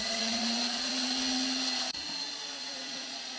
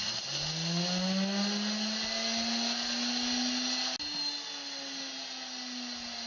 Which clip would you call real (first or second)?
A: second